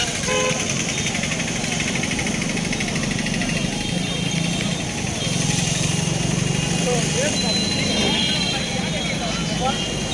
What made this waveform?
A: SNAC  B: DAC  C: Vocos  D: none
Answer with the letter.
D